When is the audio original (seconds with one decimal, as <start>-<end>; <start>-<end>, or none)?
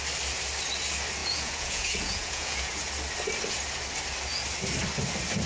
0.0-1.2; 2.9-5.5